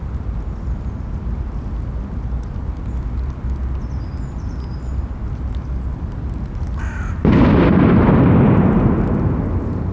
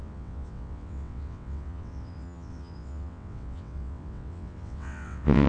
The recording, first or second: first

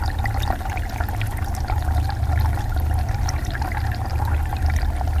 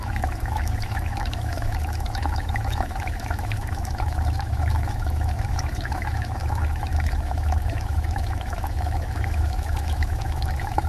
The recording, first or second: first